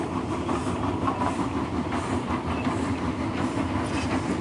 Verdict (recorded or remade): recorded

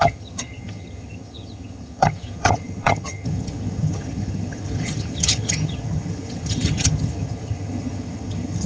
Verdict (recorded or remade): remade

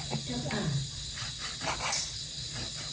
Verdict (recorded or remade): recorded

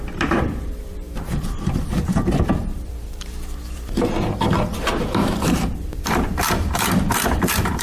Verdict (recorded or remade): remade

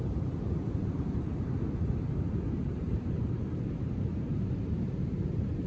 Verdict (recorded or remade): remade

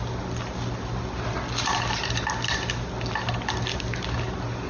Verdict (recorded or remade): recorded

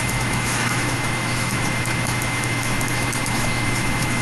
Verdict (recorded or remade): remade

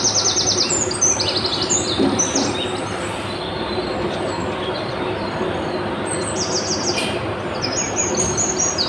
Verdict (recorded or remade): recorded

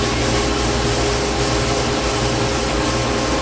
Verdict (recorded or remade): recorded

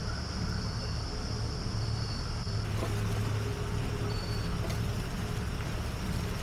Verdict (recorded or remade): recorded